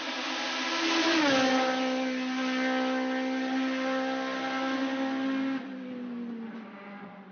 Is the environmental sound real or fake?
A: real